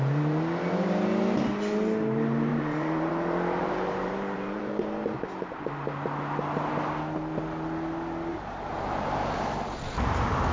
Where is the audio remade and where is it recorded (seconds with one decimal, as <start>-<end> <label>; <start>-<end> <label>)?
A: 0.0-2.5 recorded; 2.5-3.1 remade; 3.1-3.6 recorded; 3.6-4.6 remade; 4.6-8.3 recorded; 8.3-10.1 remade; 10.1-10.5 recorded